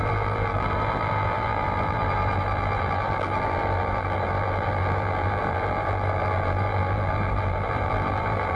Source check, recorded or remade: remade